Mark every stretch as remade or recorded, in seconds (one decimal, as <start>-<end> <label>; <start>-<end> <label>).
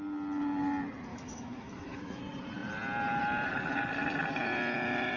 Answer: 0.0-1.1 recorded; 1.1-2.2 remade; 2.2-5.2 recorded